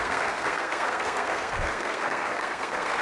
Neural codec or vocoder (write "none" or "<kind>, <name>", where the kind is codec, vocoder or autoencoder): codec, SNAC